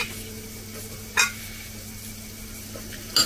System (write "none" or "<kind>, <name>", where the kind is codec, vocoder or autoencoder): none